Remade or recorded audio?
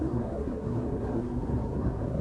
remade